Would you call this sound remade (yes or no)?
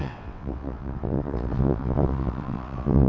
yes